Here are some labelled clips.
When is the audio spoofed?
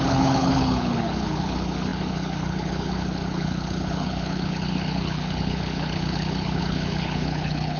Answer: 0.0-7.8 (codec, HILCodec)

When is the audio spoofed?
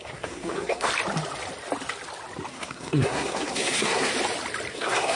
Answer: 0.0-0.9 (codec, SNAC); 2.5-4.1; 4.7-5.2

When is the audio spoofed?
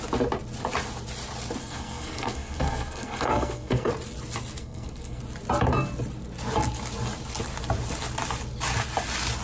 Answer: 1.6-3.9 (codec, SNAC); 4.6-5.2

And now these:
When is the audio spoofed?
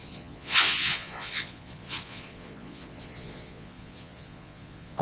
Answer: 0.0-5.0 (vocoder, Vocos)